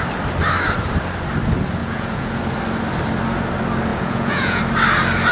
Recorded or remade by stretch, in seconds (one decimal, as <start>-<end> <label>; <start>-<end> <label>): 0.0-1.8 recorded; 1.8-2.4 remade; 2.4-3.9 recorded; 3.9-4.6 remade; 4.6-5.3 recorded

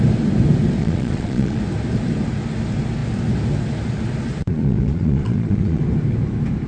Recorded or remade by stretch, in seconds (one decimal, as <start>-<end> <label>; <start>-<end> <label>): 0.0-0.8 recorded; 0.8-1.6 remade; 1.6-4.4 recorded; 4.4-5.8 remade; 5.8-6.7 recorded

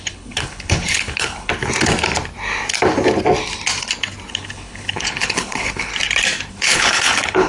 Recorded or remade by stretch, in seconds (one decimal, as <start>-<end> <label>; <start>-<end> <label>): 0.0-1.5 remade; 1.5-4.3 recorded; 4.3-5.9 remade; 5.9-6.5 recorded; 6.5-7.5 remade

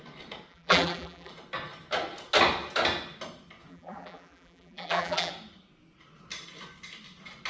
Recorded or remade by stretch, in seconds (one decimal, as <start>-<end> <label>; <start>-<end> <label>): 0.0-0.5 recorded; 0.5-1.3 remade; 1.3-3.7 recorded; 3.7-5.3 remade; 5.3-7.5 recorded

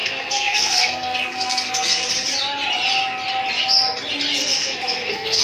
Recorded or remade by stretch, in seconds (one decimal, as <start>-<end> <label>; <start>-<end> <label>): 0.0-2.1 remade; 2.1-4.4 recorded; 4.4-5.4 remade